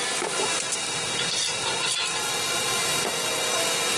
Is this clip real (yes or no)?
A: no